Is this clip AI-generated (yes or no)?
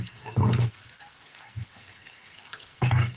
yes